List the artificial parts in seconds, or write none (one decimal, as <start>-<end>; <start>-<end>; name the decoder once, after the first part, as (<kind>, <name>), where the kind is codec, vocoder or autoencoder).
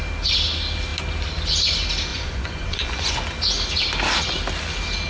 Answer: 2.1-3.1 (vocoder, Vocos)